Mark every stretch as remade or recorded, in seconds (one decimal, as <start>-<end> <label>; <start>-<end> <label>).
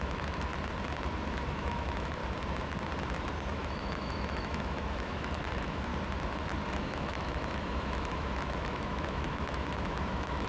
0.0-0.5 remade; 0.5-1.5 recorded; 1.5-2.2 remade; 2.2-3.5 recorded; 3.5-5.9 remade; 5.9-6.7 recorded; 6.7-10.5 remade